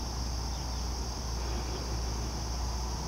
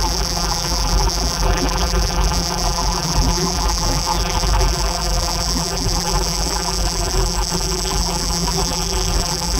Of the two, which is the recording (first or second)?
first